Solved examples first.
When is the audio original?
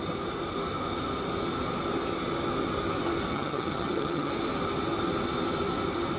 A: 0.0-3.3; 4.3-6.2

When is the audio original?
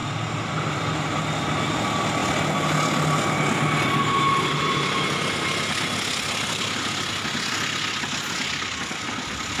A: 1.2-9.6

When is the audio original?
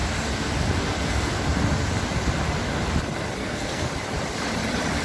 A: 0.0-3.4; 3.9-5.0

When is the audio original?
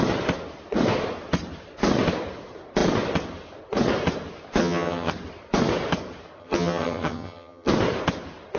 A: 0.0-4.6; 5.1-6.4; 7.7-8.6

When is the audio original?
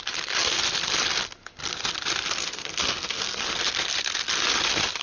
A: 0.0-2.4; 3.4-5.0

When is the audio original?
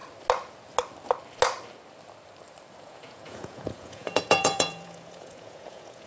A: 0.0-2.8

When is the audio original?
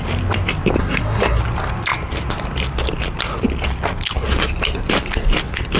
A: 0.0-0.8; 1.4-5.8